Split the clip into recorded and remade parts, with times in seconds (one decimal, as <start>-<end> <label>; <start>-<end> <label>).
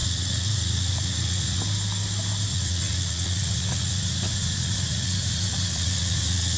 0.0-1.6 remade; 1.6-2.5 recorded; 2.5-6.6 remade